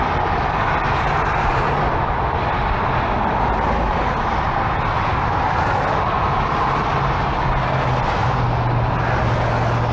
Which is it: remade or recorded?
recorded